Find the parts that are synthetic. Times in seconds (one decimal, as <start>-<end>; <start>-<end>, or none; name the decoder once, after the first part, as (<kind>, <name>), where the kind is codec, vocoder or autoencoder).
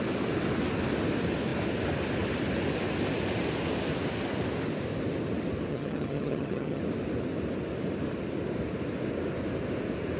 5.7-6.8 (vocoder, HiFi-GAN)